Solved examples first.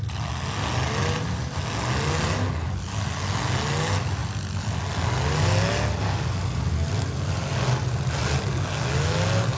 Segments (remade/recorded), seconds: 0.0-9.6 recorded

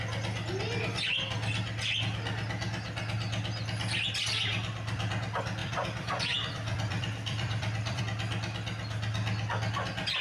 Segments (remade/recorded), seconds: 0.0-4.5 recorded; 4.5-5.1 remade; 5.1-5.6 recorded; 5.6-8.0 remade; 8.0-10.2 recorded

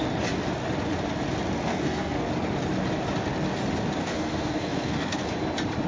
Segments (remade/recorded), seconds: 0.0-1.7 recorded; 1.7-2.3 remade; 2.3-4.0 recorded; 4.0-5.2 remade; 5.2-5.9 recorded

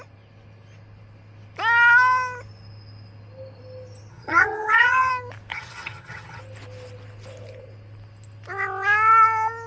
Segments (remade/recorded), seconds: 0.0-4.1 recorded; 4.1-5.1 remade; 5.1-5.5 recorded; 5.5-6.4 remade; 6.4-9.7 recorded

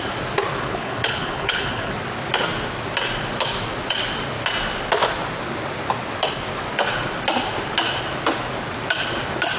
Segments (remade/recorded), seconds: 0.0-0.6 recorded; 0.6-1.9 remade; 1.9-9.6 recorded

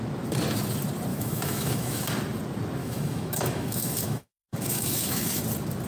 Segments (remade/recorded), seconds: 0.0-1.1 recorded; 1.1-2.1 remade; 2.1-2.8 recorded; 2.8-5.4 remade; 5.4-5.9 recorded

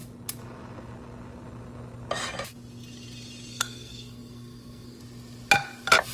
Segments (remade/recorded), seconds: 0.0-3.5 recorded; 3.5-5.0 remade; 5.0-6.1 recorded